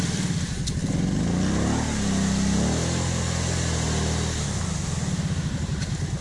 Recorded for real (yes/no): yes